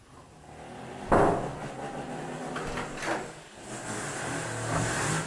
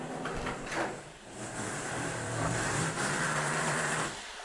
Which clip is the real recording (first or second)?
first